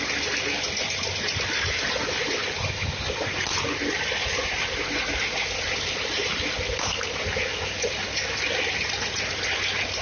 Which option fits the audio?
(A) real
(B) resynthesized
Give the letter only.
A